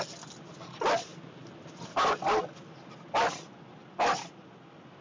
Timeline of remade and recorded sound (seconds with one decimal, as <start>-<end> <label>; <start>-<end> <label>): 0.0-5.0 recorded